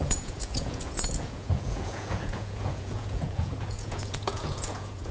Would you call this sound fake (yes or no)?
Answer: yes